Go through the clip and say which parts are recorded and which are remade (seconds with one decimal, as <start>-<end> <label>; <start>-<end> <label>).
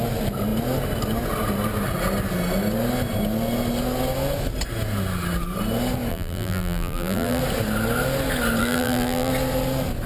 0.0-6.1 recorded; 6.1-7.4 remade; 7.4-8.6 recorded; 8.6-9.3 remade; 9.3-10.1 recorded